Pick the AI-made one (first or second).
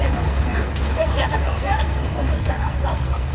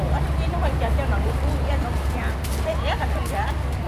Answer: first